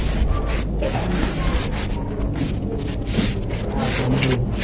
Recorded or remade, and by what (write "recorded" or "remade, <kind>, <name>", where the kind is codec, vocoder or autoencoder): recorded